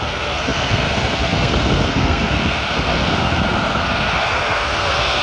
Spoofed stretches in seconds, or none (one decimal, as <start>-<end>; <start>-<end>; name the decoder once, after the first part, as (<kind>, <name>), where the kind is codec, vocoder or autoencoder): 0.0-5.2 (codec, SNAC)